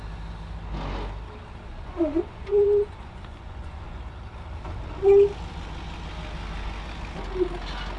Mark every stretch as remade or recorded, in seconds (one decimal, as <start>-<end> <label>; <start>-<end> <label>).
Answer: 0.0-1.7 recorded; 1.7-4.0 remade; 4.0-8.0 recorded